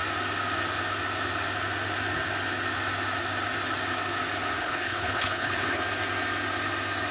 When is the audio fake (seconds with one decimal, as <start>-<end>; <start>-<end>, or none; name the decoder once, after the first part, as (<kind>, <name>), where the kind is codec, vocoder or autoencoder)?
4.6-5.8 (codec, HILCodec)